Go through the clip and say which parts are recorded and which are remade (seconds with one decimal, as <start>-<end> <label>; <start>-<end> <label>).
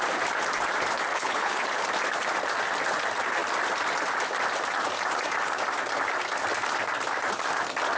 0.0-1.1 recorded; 1.1-1.7 remade; 1.7-8.0 recorded